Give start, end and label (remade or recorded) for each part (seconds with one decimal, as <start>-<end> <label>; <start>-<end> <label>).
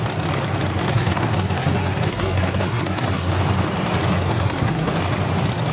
0.0-0.9 recorded; 0.9-3.3 remade; 3.3-4.3 recorded; 4.3-4.9 remade; 4.9-5.7 recorded